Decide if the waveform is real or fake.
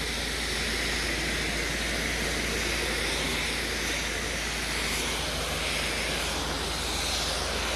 real